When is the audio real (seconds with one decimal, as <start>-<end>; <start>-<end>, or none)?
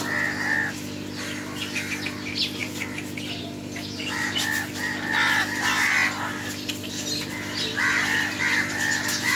0.0-9.4